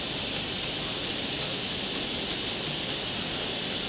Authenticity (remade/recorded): recorded